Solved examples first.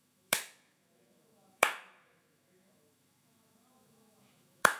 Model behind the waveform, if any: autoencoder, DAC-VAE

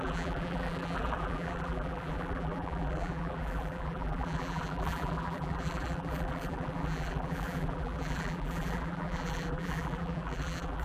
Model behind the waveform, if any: vocoder, BigVGAN v2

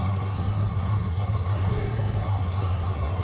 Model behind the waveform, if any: codec, SNAC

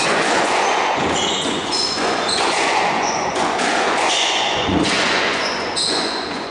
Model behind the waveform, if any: vocoder, Vocos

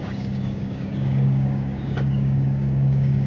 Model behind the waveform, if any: codec, DAC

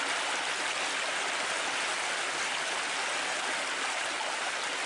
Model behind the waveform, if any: none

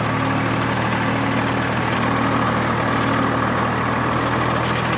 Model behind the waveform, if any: none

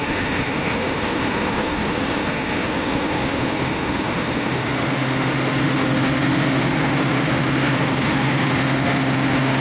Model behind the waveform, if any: autoencoder, DAC-VAE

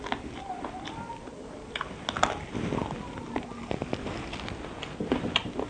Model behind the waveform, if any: none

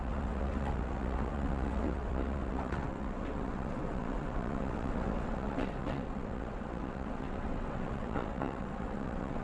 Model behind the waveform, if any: vocoder, WaveNeXt